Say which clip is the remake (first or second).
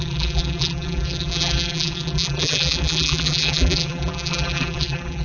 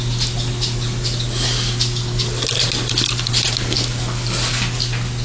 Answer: first